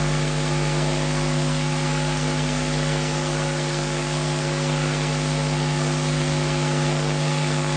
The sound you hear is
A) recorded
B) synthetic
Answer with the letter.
B